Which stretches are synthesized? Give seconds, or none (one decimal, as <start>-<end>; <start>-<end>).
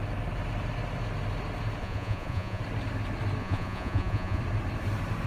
1.8-2.6; 3.4-4.4